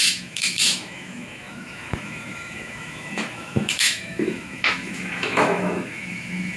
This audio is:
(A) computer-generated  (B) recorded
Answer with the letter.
A